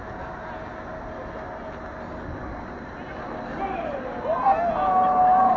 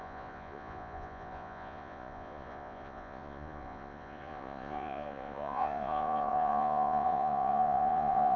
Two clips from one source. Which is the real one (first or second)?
first